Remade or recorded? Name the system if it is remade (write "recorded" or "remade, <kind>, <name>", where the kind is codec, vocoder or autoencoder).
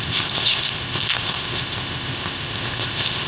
remade, codec, ZipCodec